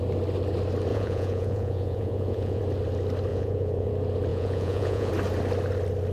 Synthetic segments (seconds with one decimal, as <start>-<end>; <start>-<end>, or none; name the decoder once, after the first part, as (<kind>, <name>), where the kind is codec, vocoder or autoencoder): 0.9-2.6 (vocoder, Vocos); 3.3-3.9; 4.3-5.1